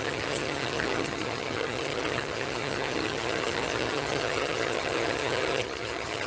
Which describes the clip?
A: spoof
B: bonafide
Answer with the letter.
A